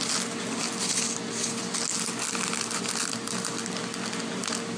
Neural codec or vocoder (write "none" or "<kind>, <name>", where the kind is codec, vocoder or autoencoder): none